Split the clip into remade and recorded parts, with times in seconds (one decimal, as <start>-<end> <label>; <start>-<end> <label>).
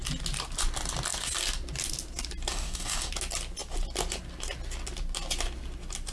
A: 0.0-2.5 recorded; 2.5-3.1 remade; 3.1-6.1 recorded